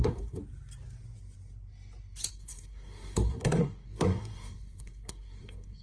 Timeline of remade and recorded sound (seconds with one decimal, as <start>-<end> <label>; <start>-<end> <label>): 0.0-0.4 remade; 0.4-2.3 recorded; 2.3-5.8 remade